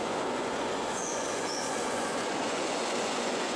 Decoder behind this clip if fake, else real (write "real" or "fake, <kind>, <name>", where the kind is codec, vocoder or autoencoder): fake, vocoder, Vocos